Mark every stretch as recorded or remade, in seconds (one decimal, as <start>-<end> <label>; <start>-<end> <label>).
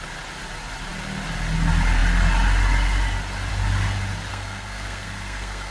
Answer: 0.0-4.3 recorded; 4.3-5.7 remade